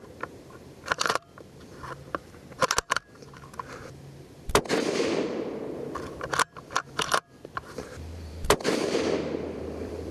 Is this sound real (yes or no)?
no